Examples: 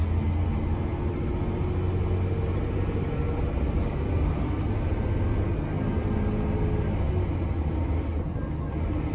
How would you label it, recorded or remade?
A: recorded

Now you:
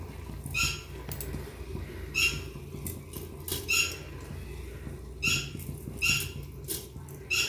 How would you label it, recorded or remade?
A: recorded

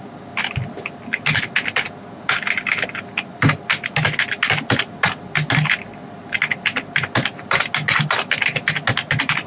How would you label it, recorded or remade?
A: recorded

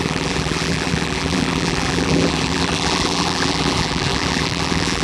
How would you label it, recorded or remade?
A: remade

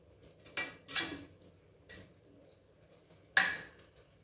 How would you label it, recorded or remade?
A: recorded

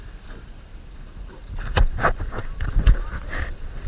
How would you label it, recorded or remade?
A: remade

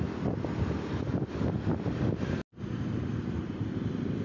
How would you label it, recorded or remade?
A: recorded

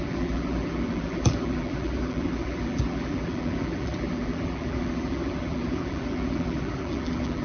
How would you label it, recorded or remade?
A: remade